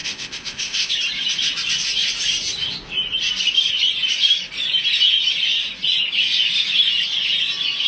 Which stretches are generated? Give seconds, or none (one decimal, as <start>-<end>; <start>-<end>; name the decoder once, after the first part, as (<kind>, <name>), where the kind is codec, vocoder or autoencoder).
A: 0.0-0.9 (codec, ZipCodec)